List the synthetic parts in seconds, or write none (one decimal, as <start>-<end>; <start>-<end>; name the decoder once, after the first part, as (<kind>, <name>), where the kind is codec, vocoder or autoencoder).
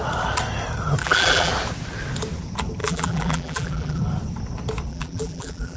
1.0-1.5 (vocoder, BigVGAN v2); 2.8-4.0; 4.9-5.8